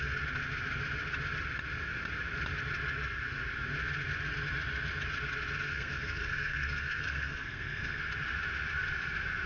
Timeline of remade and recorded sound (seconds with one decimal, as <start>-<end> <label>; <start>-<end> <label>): 0.0-5.7 recorded; 5.7-8.0 remade; 8.0-9.5 recorded